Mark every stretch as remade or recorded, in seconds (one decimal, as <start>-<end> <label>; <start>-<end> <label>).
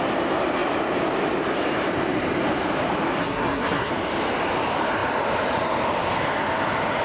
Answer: 0.0-3.2 recorded; 3.2-3.9 remade; 3.9-7.0 recorded